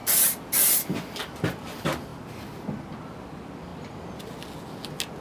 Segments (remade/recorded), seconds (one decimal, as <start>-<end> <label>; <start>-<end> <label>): 0.0-0.6 remade; 0.6-5.2 recorded